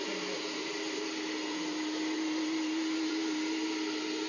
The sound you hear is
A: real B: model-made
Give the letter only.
B